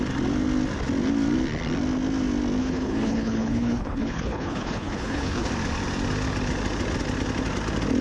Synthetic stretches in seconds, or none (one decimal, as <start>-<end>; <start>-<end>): 2.6-5.5

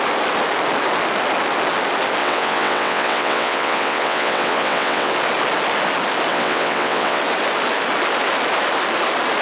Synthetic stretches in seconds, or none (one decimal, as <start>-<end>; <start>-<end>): 2.2-5.1; 6.3-7.2

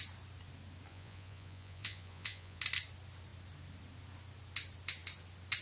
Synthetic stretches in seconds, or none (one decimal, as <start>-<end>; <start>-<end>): 0.9-2.6

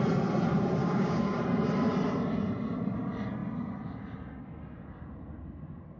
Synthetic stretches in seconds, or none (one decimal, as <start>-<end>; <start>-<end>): 0.8-1.4

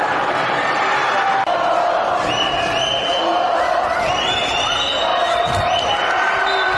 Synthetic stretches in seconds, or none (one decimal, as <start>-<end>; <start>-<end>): none